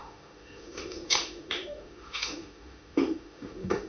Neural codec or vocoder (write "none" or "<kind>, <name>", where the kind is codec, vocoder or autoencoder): autoencoder, DAC-VAE